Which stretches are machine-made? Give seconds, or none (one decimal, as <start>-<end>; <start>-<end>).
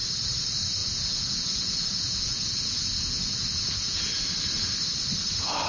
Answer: 0.8-4.2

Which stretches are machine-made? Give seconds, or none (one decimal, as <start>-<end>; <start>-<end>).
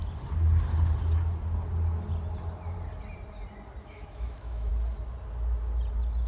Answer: 3.8-4.7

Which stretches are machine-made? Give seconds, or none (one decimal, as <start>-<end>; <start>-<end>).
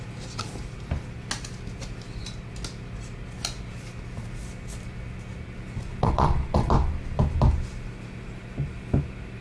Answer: 5.9-6.7